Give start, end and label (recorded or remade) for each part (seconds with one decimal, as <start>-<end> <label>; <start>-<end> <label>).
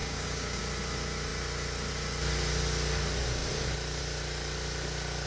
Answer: 0.0-0.6 remade; 0.6-5.3 recorded